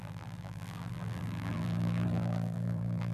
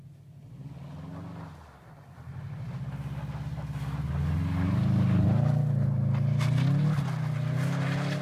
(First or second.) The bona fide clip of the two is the second